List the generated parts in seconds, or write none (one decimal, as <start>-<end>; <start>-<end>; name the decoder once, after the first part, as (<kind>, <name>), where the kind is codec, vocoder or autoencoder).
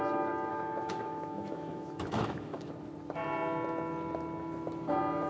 0.5-2.7 (autoencoder, DAC-VAE)